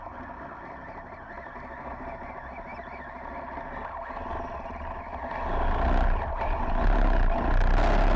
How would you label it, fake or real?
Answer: real